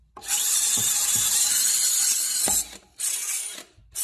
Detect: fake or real real